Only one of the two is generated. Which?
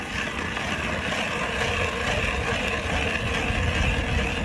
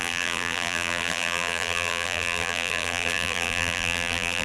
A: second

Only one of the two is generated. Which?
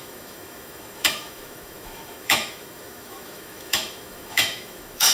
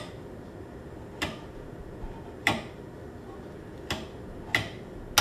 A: first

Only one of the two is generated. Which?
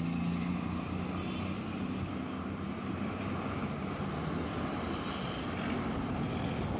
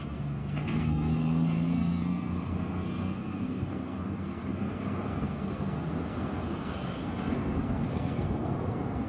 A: second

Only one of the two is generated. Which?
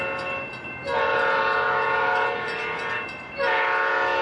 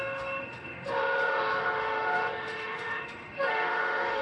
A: second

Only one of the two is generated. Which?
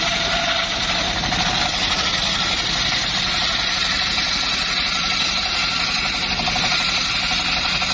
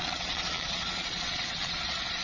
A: second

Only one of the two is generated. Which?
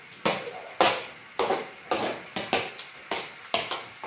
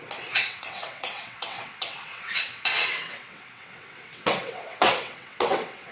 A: second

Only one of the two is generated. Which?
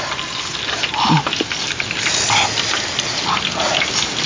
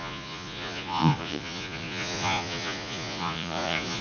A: second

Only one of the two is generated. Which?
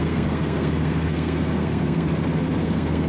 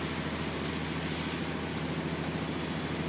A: first